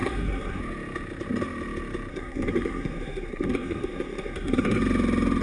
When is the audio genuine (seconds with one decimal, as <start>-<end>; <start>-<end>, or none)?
0.6-2.1; 4.8-5.4